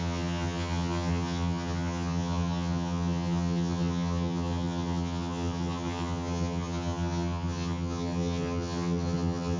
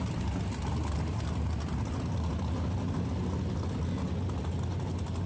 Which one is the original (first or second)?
second